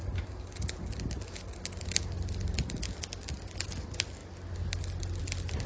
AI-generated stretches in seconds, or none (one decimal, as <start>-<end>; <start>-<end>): none